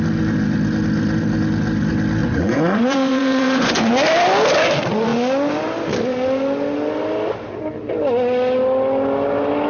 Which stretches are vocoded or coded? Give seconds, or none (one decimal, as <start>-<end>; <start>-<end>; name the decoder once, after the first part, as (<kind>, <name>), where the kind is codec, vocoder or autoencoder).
2.2-3.9 (vocoder, Vocos)